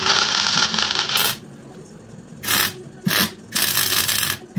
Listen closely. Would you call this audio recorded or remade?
recorded